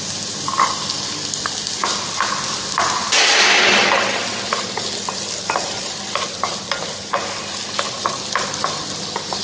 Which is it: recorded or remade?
recorded